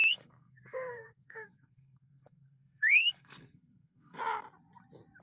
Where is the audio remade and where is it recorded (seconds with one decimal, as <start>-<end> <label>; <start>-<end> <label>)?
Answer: 0.0-4.2 remade; 4.2-5.2 recorded